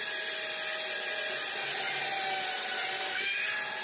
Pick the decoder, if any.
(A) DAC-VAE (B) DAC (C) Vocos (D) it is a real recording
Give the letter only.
D